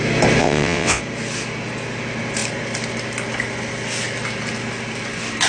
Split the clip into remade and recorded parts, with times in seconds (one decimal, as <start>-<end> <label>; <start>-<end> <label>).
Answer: 0.0-0.4 recorded; 0.4-1.0 remade; 1.0-5.5 recorded